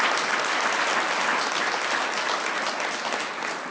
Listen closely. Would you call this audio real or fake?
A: real